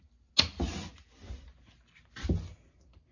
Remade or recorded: recorded